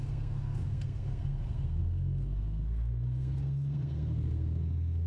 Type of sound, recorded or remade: remade